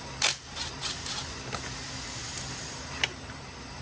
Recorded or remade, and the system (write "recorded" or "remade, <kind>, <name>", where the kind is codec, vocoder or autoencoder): recorded